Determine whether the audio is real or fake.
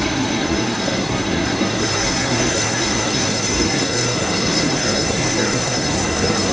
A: fake